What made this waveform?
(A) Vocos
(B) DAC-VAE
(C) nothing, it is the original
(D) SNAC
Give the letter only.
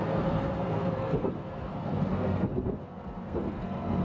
D